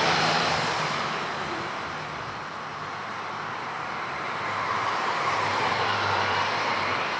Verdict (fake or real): fake